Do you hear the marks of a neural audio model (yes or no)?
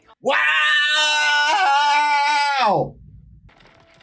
no